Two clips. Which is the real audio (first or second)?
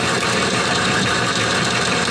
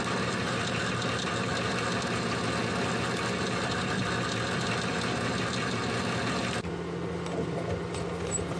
second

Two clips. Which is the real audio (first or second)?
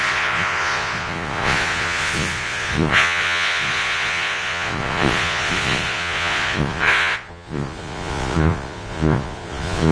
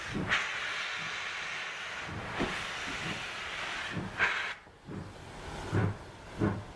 second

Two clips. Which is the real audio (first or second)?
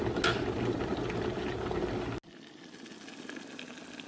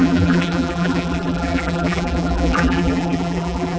first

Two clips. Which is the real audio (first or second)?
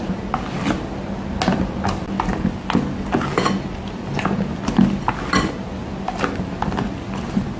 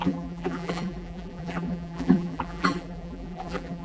first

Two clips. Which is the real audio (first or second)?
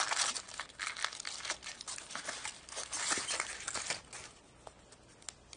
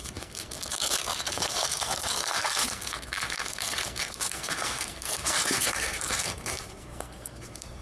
first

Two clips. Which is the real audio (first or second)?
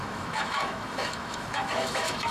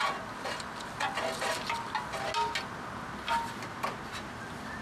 second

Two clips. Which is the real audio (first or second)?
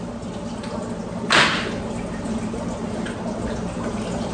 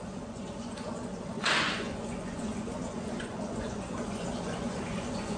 first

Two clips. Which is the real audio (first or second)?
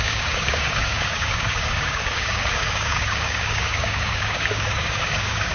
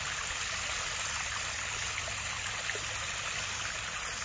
second